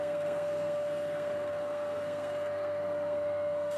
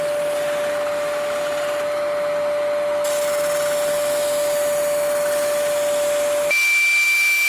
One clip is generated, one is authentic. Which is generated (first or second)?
first